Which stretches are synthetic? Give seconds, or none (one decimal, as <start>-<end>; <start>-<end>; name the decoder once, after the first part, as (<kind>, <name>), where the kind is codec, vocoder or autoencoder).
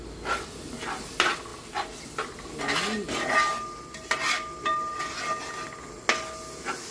none